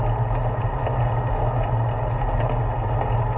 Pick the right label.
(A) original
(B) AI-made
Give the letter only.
A